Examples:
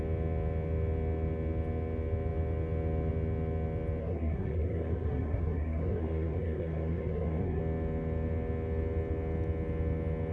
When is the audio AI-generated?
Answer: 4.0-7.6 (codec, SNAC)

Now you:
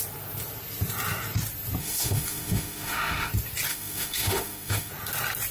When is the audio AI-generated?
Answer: 1.8-3.3 (autoencoder, DAC-VAE); 3.7-4.9

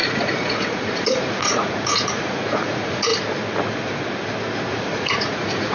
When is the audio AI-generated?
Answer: 0.0-3.1 (vocoder, Vocos); 4.7-5.7

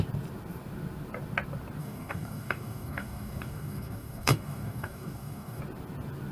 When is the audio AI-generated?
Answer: 1.8-5.6 (codec, DAC)